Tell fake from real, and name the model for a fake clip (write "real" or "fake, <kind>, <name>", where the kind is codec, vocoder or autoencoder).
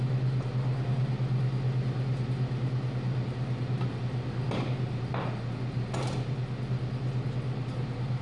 real